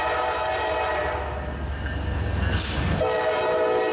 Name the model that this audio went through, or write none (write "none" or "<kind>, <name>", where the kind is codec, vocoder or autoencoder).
none